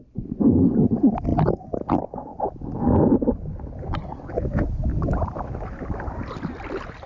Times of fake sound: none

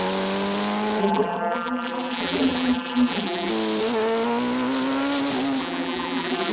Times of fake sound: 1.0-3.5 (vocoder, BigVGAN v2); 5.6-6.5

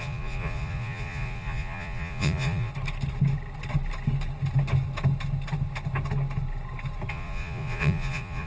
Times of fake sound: 0.0-2.7 (vocoder, Vocos); 7.1-8.5

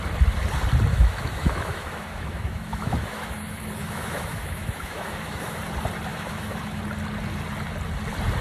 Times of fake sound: 0.9-5.6 (autoencoder, DAC-VAE); 6.1-6.8

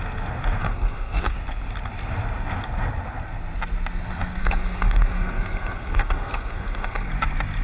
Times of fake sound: 0.6-1.3 (codec, SNAC); 4.4-7.1